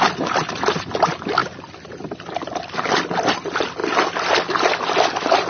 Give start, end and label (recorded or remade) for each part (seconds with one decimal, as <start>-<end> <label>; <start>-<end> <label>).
0.0-5.5 recorded